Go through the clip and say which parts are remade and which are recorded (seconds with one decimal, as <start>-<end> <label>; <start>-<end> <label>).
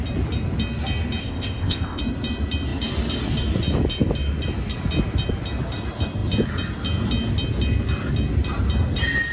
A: 0.0-1.2 recorded; 1.2-2.0 remade; 2.0-9.3 recorded